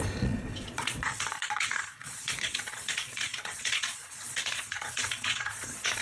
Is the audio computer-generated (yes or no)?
yes